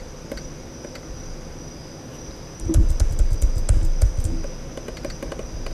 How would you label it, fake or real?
real